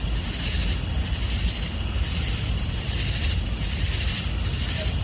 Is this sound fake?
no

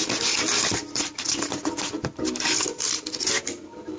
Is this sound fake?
no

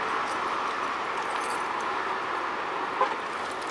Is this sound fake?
no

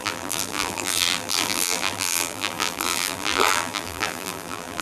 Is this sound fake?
yes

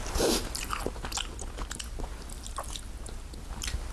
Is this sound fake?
no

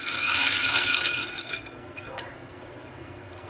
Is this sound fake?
yes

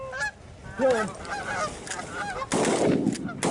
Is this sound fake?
no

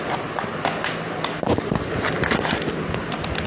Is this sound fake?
no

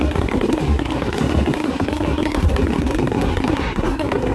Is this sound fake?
yes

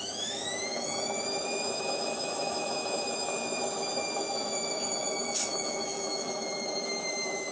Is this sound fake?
yes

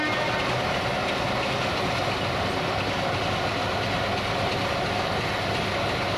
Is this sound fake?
no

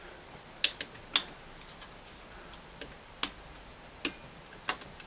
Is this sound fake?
no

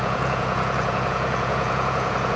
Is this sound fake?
yes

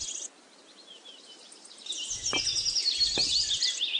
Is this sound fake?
no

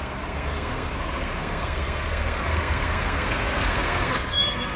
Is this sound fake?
yes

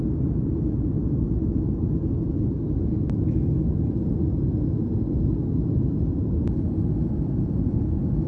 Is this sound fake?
no